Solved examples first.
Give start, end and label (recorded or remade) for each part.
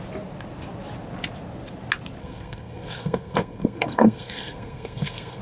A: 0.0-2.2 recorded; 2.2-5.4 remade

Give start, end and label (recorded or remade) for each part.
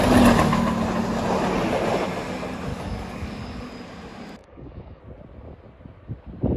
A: 0.0-2.7 recorded; 2.7-3.7 remade; 3.7-4.4 recorded; 4.4-5.0 remade; 5.0-6.6 recorded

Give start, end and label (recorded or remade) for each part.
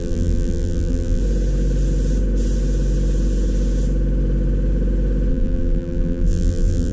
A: 0.0-1.2 remade; 1.2-5.3 recorded; 5.3-6.9 remade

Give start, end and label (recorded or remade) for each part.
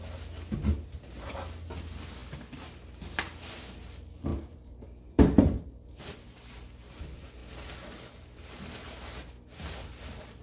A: 0.0-10.4 recorded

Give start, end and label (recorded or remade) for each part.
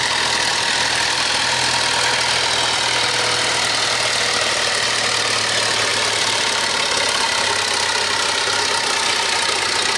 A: 0.0-5.9 recorded; 5.9-6.7 remade; 6.7-10.0 recorded